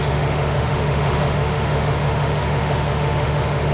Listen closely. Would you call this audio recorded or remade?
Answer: remade